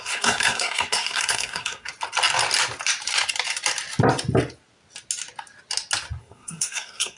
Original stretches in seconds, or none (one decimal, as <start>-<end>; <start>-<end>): 1.9-6.2